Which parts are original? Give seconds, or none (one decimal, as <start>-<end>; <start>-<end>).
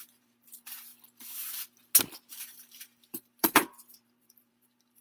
0.9-2.3